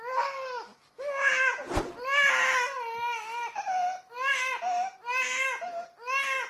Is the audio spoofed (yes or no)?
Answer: no